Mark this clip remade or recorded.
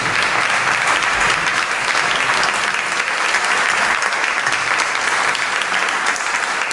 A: recorded